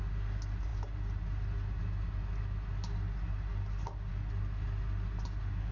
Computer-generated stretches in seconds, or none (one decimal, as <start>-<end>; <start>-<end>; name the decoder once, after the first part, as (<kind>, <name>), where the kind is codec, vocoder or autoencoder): none